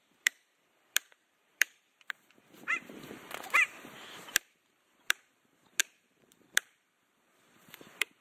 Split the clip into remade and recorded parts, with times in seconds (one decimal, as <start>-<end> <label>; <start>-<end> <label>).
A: 0.0-8.2 remade